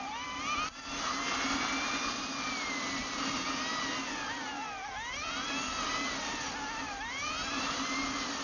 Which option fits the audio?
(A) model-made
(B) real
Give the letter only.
B